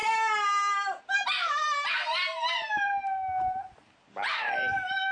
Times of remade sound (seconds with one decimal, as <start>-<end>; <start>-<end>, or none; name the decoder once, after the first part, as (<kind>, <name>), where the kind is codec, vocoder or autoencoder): none